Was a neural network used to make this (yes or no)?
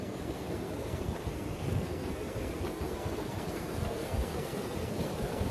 yes